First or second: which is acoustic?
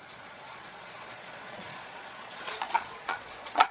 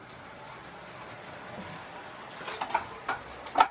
second